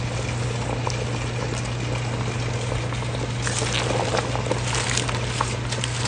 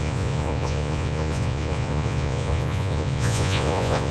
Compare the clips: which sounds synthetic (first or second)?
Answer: second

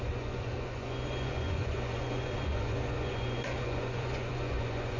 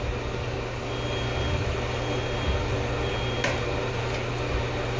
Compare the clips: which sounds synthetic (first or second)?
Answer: first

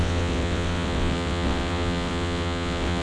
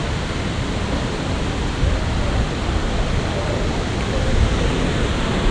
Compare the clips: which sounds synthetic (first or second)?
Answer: first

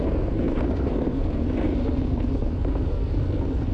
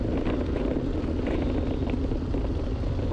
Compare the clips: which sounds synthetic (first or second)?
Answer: first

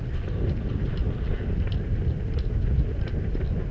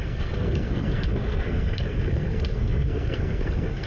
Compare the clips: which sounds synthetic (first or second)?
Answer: second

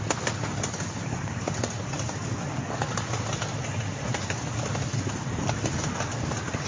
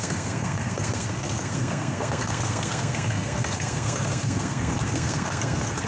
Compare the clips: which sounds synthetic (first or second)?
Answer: second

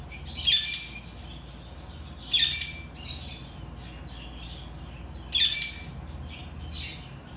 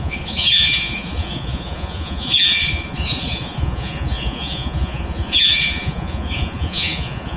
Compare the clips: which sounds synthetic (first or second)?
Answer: second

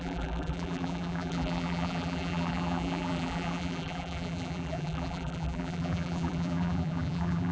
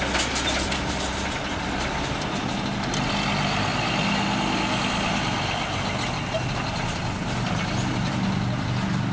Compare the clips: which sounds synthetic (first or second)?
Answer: first